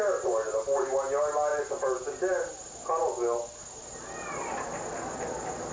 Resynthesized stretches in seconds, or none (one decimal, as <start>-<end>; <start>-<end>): none